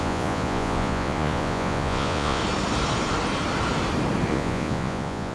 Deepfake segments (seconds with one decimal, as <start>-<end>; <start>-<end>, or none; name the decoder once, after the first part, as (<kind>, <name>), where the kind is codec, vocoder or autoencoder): 0.0-2.4 (vocoder, Vocos); 4.3-5.3